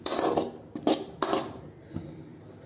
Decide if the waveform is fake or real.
real